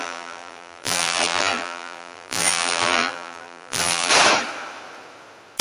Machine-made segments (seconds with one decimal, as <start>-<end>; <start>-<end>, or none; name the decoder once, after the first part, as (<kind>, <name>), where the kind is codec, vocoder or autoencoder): 0.0-4.1 (vocoder, BigVGAN v2)

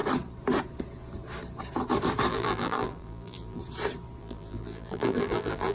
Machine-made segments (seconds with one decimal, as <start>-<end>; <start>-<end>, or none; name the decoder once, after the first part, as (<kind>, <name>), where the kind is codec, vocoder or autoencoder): 2.3-3.6 (vocoder, BigVGAN v2); 4.2-5.7